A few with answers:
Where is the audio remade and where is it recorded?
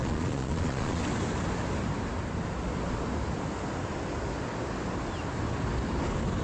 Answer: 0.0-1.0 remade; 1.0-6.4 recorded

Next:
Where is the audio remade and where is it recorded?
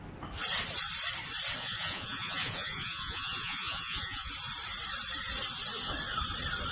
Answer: 0.0-1.6 recorded; 1.6-4.3 remade; 4.3-6.7 recorded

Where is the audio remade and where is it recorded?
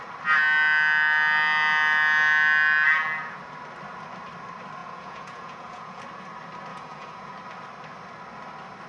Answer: 0.0-4.8 recorded; 4.8-6.0 remade; 6.0-6.7 recorded; 6.7-7.3 remade; 7.3-8.9 recorded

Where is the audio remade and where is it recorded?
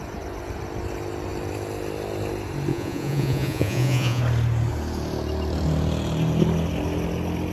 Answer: 0.0-2.7 recorded; 2.7-4.2 remade; 4.2-7.5 recorded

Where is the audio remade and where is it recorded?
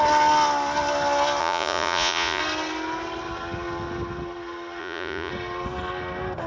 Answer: 0.0-1.4 recorded; 1.4-2.4 remade; 2.4-4.8 recorded; 4.8-5.3 remade; 5.3-6.5 recorded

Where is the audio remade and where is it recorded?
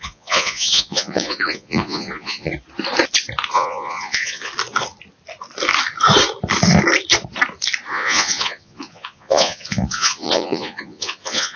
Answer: 0.0-2.5 remade; 2.5-3.5 recorded; 3.5-4.5 remade; 4.5-7.9 recorded; 7.9-11.6 remade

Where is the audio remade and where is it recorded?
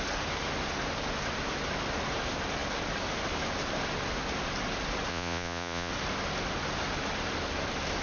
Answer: 0.0-5.1 recorded; 5.1-5.9 remade; 5.9-8.0 recorded